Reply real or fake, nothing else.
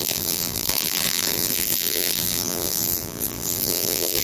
fake